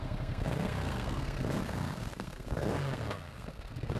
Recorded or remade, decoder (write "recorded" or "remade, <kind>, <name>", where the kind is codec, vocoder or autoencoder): remade, codec, SNAC